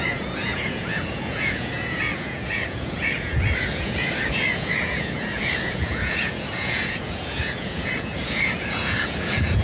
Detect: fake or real fake